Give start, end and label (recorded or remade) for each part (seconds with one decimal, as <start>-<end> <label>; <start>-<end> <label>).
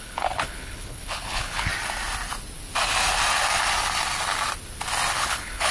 0.0-1.7 remade; 1.7-5.1 recorded; 5.1-5.7 remade